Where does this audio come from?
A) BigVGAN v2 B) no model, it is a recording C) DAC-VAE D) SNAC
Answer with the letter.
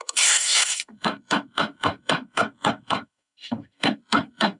D